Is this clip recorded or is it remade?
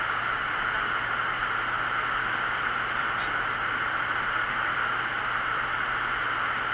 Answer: recorded